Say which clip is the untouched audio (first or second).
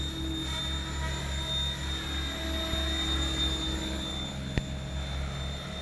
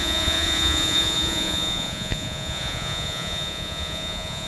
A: first